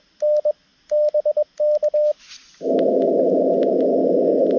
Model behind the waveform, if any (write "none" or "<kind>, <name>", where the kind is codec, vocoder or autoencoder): none